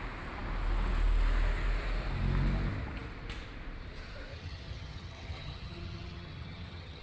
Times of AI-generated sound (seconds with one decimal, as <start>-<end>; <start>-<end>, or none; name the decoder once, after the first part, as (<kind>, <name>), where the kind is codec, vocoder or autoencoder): 4.3-7.0 (vocoder, HiFi-GAN)